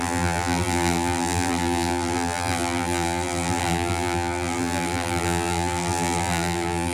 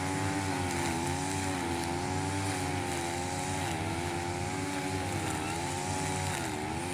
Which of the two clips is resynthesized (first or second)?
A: first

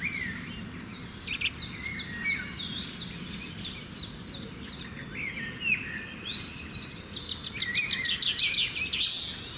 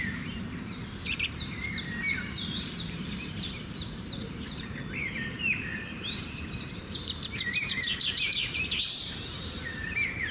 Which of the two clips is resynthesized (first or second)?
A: second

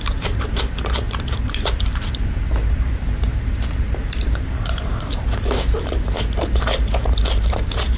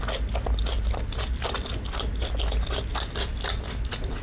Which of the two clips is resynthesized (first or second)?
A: first